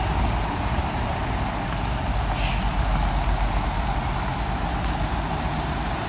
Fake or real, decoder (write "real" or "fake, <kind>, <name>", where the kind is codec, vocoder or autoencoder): real